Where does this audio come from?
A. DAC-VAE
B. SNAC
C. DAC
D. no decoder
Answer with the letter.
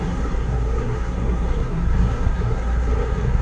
B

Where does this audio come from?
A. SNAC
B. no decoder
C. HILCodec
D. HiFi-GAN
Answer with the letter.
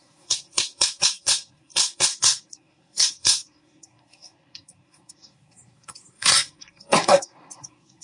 A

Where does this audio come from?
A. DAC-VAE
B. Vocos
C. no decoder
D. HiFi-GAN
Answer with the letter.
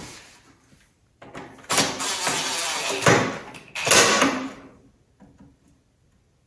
C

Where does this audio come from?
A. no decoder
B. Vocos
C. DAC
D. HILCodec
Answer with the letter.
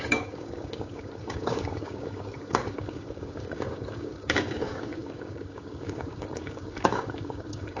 C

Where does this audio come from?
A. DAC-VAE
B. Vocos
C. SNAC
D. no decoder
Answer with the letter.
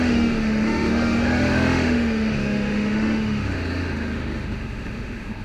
A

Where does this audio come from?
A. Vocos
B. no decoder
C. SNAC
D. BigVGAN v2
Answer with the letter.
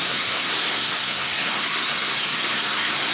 C